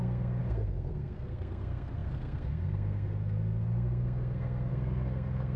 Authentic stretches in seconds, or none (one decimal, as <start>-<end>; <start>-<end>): none